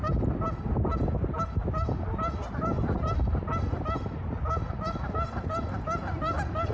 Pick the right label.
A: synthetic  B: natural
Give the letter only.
B